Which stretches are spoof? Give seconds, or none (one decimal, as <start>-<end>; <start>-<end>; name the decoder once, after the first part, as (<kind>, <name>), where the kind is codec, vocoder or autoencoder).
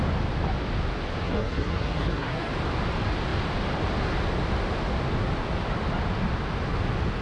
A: 1.2-2.5 (codec, SNAC)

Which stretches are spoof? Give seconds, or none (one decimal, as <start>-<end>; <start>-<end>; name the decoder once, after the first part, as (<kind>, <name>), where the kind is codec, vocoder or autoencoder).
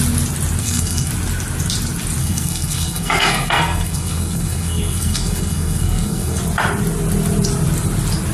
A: 0.6-1.1 (codec, SNAC); 2.2-6.4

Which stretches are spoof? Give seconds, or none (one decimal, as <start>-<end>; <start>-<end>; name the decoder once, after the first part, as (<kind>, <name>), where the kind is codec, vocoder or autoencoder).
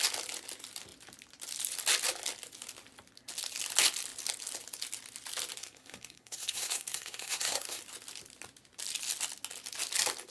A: 5.6-7.8 (codec, SNAC)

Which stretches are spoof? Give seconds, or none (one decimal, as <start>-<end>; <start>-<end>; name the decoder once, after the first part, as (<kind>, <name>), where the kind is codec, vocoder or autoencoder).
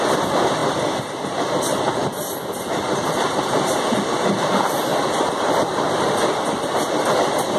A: none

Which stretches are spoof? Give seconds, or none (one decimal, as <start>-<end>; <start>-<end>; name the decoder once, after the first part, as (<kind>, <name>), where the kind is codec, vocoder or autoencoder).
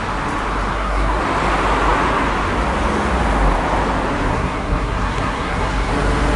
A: 0.7-1.2 (codec, SNAC); 4.3-5.9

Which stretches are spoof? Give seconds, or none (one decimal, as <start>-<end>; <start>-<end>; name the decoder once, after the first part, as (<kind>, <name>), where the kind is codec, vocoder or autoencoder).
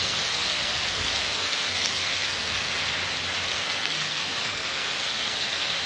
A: 0.0-3.0 (codec, SNAC); 3.5-5.9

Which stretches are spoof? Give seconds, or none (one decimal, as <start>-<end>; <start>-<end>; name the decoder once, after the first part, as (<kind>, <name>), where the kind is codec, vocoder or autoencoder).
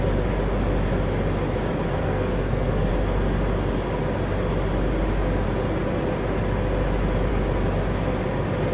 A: 2.0-2.9 (codec, SNAC)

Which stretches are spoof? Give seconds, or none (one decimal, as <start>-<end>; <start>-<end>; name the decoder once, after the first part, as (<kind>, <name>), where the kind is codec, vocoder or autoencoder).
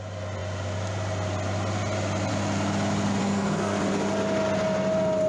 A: 3.2-3.8 (codec, SNAC)